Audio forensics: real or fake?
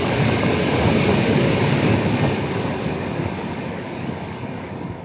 fake